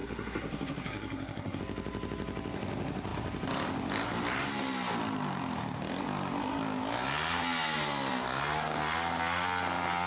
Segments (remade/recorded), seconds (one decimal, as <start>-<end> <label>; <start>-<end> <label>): 0.0-1.6 remade; 1.6-10.1 recorded